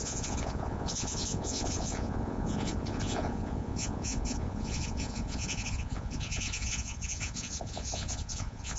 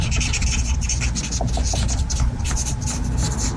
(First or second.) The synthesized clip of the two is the first